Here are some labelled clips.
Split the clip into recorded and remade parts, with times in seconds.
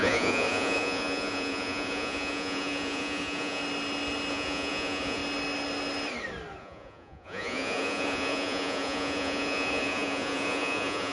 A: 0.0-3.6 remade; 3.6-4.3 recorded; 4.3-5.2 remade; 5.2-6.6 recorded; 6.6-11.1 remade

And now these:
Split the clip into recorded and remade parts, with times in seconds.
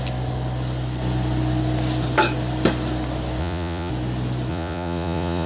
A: 0.0-3.4 recorded; 3.4-3.9 remade; 3.9-4.5 recorded; 4.5-5.5 remade